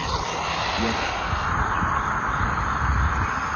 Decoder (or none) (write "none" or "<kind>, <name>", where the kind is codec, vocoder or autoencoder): none